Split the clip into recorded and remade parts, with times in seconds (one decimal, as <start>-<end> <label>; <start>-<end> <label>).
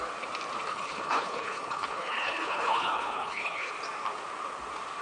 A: 0.0-0.7 recorded; 0.7-3.7 remade; 3.7-5.0 recorded